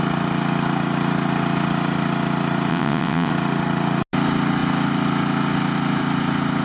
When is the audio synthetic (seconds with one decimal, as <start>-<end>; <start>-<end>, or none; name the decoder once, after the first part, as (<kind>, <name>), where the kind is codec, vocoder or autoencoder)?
2.7-3.3 (vocoder, WaveNeXt)